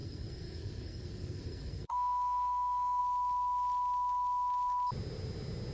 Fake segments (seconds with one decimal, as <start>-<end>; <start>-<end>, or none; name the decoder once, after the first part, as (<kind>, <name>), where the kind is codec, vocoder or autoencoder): 0.0-3.0 (codec, SNAC)